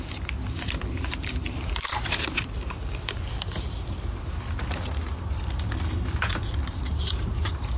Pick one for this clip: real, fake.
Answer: real